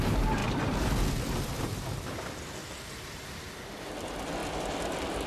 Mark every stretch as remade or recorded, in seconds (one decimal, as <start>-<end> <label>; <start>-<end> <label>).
0.0-2.6 recorded; 2.6-3.1 remade; 3.1-4.4 recorded; 4.4-5.3 remade